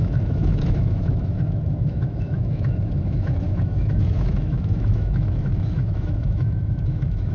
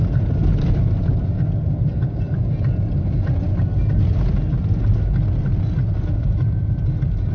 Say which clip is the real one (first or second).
second